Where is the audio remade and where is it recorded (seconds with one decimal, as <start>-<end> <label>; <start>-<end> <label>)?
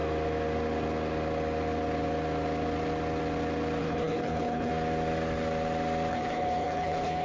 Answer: 0.0-3.8 recorded; 3.8-4.7 remade; 4.7-6.1 recorded; 6.1-7.2 remade